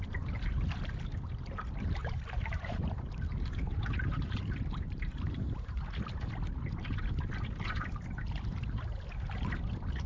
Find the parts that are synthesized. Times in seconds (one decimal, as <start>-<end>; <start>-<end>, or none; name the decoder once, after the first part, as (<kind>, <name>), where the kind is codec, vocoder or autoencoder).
2.0-5.8 (vocoder, BigVGAN v2)